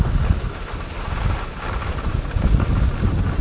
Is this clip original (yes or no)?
yes